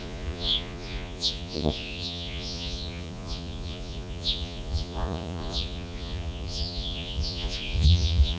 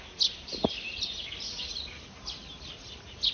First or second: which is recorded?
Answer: second